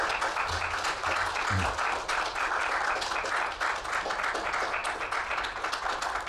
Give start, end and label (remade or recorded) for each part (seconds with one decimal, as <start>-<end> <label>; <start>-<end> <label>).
0.0-6.3 recorded